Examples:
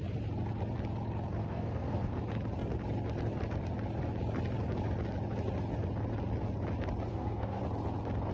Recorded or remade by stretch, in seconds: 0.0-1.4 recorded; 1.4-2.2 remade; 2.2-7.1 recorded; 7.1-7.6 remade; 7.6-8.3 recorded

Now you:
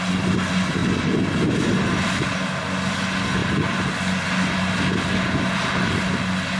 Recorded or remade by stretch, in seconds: 0.0-6.6 recorded

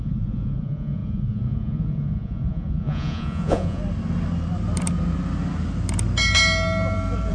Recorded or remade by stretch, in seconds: 0.0-3.8 remade; 3.8-7.3 recorded

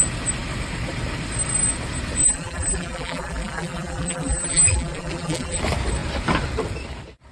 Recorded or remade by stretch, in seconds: 0.0-2.2 recorded; 2.2-5.6 remade; 5.6-7.3 recorded

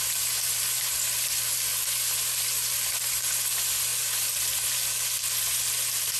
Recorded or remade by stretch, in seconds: 0.0-6.2 recorded